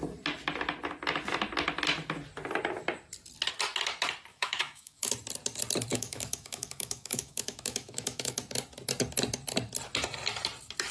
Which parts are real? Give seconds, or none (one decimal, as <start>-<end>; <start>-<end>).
0.0-4.3; 5.1-5.9; 8.4-10.9